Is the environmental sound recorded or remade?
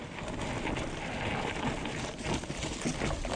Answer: recorded